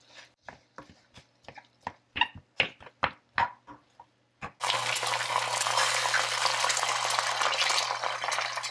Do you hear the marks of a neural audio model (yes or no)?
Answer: no